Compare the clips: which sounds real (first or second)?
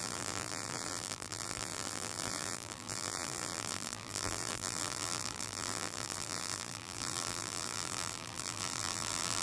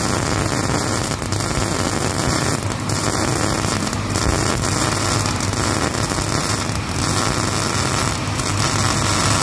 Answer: second